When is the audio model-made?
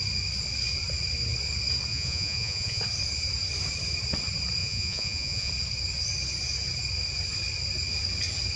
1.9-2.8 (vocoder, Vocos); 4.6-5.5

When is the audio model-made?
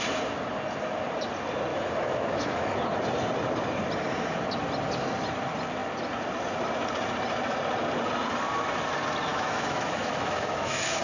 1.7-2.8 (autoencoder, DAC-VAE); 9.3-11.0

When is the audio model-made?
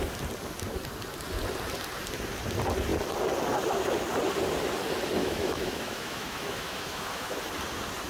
5.2-7.4 (autoencoder, DAC-VAE)